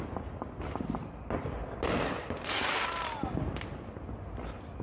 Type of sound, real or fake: real